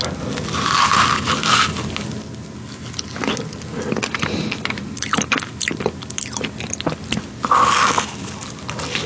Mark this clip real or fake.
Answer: real